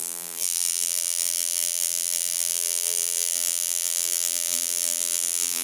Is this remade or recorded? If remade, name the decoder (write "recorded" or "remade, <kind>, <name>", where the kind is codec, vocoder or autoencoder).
remade, vocoder, BigVGAN v2